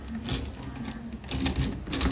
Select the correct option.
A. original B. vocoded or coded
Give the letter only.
A